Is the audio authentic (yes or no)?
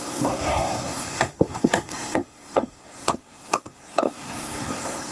no